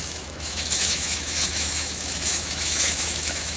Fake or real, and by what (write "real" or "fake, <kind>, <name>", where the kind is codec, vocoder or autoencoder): fake, autoencoder, DAC-VAE